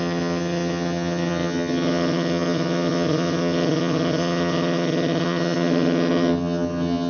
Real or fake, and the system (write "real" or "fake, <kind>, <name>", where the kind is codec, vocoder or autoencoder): fake, vocoder, HiFi-GAN